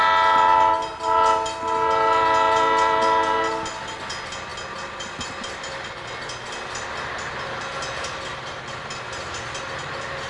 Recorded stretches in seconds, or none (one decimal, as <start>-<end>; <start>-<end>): 0.0-10.3